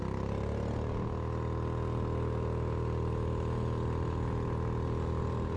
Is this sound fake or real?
real